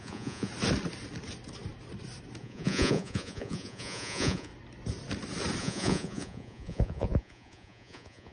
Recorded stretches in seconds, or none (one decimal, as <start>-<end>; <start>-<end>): 0.5-2.4; 4.5-5.6